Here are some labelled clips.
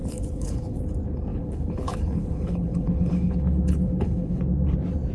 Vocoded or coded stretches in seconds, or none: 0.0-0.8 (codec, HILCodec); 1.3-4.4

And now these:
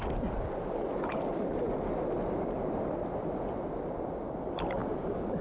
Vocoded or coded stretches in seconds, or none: 4.8-5.4 (vocoder, BigVGAN v2)

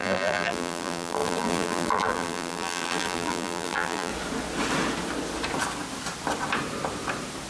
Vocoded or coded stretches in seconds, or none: 0.0-4.1 (vocoder, BigVGAN v2)

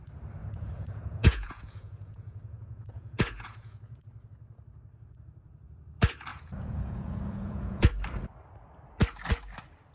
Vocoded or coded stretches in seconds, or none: 0.4-4.0 (vocoder, Vocos); 6.3-7.9